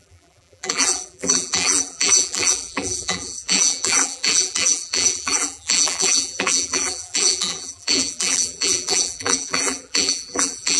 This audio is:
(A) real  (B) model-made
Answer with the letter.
B